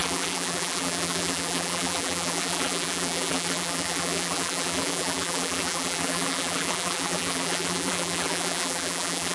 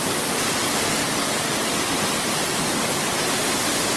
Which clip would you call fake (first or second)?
first